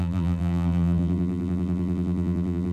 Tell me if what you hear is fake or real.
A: fake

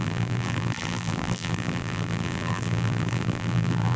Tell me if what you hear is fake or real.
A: fake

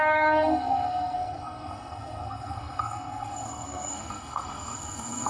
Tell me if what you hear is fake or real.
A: fake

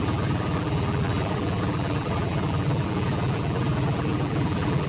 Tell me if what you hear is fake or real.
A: fake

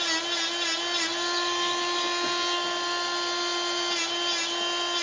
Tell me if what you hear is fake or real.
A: real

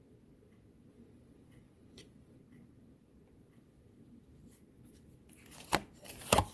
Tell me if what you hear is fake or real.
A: real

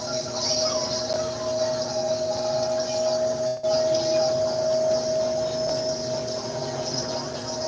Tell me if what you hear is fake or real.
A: real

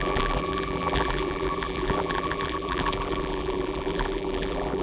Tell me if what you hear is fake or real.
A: fake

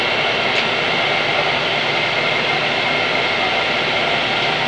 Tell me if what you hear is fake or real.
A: real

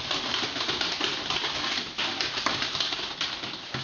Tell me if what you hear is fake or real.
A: fake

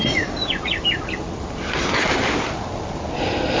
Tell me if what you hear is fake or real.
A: real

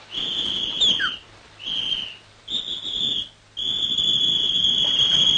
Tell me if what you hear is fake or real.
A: real